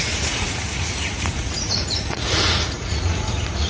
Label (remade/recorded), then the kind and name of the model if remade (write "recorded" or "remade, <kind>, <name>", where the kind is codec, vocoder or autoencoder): remade, vocoder, Vocos